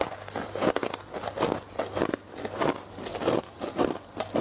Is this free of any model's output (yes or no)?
yes